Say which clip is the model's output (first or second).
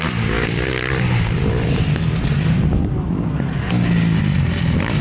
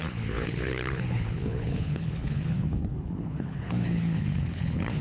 second